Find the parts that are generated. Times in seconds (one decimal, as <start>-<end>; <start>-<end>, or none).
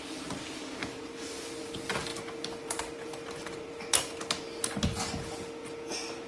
2.1-4.6